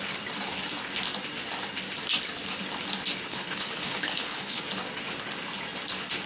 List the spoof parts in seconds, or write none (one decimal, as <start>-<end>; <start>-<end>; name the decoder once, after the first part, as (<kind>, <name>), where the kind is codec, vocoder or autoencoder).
3.3-4.6 (codec, HILCodec)